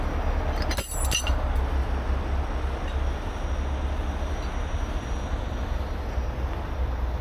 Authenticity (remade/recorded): recorded